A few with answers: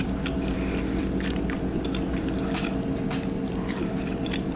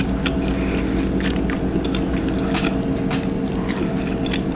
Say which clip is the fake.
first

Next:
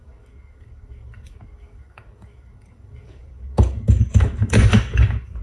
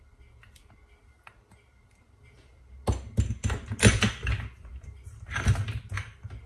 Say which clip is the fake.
first